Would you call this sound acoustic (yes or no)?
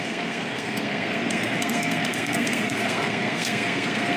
no